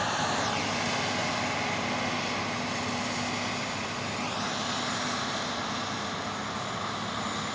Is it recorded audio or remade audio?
recorded